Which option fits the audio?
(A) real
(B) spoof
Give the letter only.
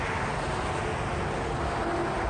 A